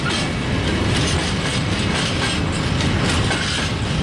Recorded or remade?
recorded